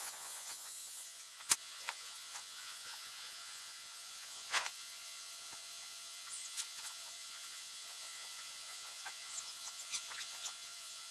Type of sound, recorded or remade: remade